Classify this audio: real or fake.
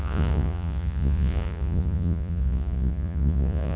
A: fake